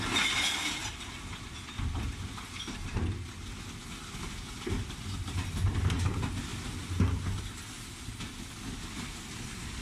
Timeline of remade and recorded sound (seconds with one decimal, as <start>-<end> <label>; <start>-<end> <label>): 0.0-9.8 recorded